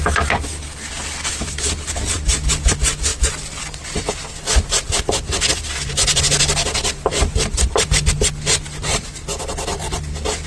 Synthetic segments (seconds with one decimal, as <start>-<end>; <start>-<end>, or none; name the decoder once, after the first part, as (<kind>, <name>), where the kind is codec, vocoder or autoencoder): none